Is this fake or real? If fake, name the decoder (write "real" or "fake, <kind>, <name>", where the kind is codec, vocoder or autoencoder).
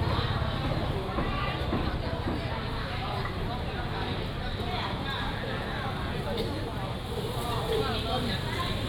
real